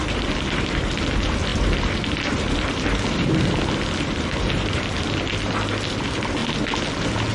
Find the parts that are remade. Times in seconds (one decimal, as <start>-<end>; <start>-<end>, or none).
0.0-6.4